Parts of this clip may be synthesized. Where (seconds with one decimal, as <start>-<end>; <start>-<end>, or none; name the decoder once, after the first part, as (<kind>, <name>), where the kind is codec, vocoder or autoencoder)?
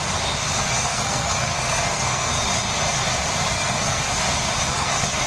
0.6-2.3 (codec, SNAC); 3.5-4.1; 4.7-5.3